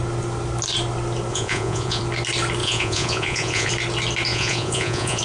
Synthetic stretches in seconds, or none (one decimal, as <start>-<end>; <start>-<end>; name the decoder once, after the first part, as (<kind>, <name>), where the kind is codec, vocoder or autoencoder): 1.3-2.0 (vocoder, Vocos); 2.6-3.7; 4.3-5.2